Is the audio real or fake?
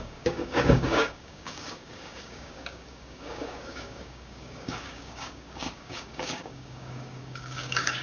fake